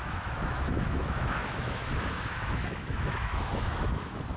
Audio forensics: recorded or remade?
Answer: remade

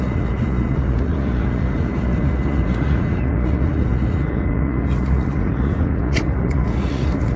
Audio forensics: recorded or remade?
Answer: remade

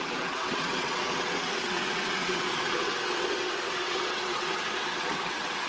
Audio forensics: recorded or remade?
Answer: remade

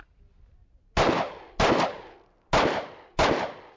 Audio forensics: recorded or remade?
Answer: recorded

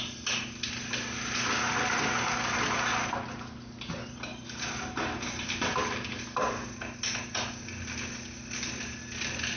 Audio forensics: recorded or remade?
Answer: recorded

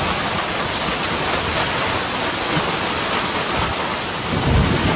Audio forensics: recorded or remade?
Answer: recorded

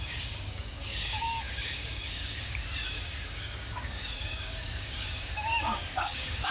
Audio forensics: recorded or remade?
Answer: remade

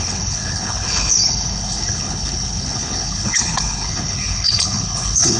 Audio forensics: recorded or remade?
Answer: remade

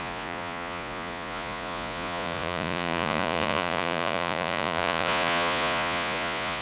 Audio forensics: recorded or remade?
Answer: remade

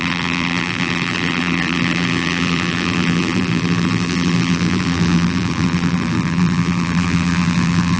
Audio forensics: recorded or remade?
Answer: remade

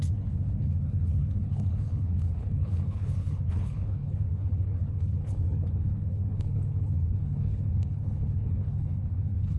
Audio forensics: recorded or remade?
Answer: remade